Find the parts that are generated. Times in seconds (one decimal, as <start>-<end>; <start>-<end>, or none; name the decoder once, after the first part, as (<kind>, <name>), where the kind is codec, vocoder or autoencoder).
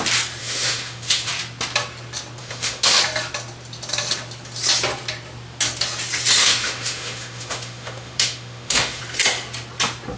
0.4-1.3 (autoencoder, DAC-VAE); 2.4-3.0; 6.4-9.0